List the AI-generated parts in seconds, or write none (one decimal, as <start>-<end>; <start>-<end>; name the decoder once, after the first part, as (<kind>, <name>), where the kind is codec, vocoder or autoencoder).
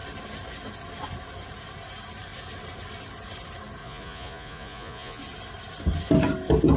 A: 3.8-5.2 (vocoder, Vocos)